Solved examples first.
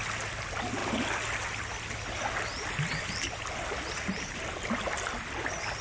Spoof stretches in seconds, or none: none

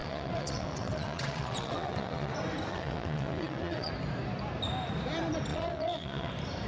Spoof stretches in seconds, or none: 0.0-2.3 (vocoder, WaveNeXt); 2.7-3.9; 5.5-6.3

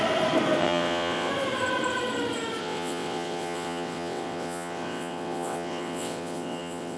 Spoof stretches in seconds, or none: 0.6-1.3 (vocoder, WaveNeXt); 2.6-7.0

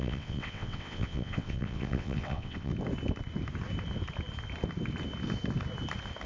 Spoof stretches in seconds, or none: 0.0-2.7 (vocoder, WaveNeXt)

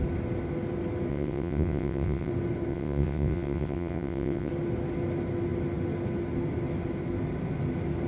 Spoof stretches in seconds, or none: 1.1-2.3 (vocoder, WaveNeXt); 2.7-4.5